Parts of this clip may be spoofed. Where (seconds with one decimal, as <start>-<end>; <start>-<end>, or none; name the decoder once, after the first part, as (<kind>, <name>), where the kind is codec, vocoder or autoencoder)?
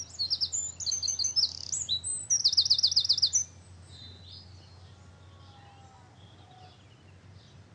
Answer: none